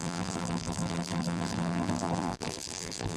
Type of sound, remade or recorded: remade